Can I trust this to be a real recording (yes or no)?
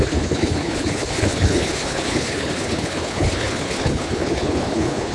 no